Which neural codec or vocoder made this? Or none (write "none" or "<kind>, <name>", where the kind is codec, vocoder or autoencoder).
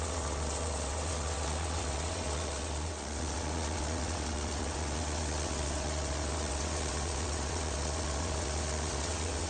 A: vocoder, WaveNeXt